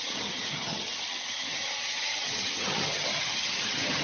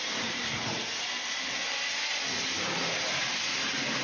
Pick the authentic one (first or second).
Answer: second